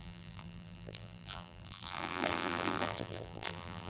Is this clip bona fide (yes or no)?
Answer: no